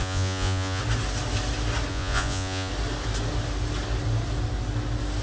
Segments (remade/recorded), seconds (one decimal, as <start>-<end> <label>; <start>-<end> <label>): 0.0-0.8 remade; 0.8-1.9 recorded; 1.9-2.7 remade; 2.7-5.2 recorded